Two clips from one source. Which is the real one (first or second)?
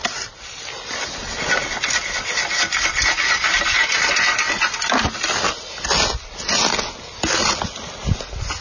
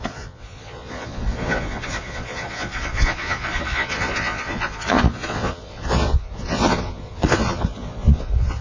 first